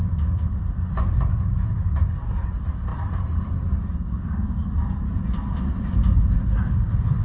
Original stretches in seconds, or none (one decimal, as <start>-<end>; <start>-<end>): 0.0-7.2